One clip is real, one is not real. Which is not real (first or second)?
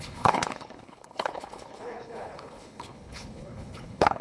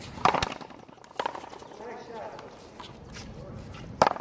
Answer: first